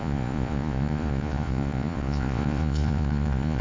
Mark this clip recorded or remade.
remade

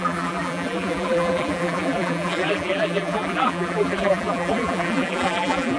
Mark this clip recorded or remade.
remade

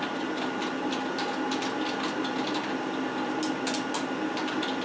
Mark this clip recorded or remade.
recorded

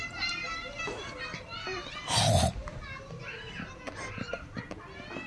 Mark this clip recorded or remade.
recorded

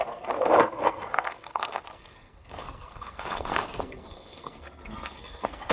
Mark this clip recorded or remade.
remade